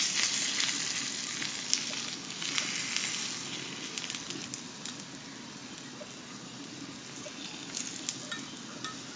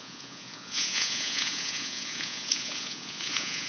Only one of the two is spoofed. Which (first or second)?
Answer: second